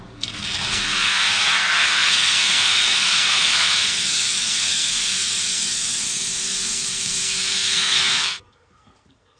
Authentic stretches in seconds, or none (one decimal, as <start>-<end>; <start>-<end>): none